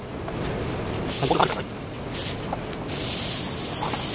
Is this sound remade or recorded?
recorded